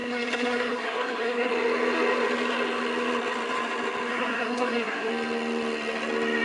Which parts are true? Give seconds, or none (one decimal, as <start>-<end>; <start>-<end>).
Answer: 1.5-4.1; 5.1-6.4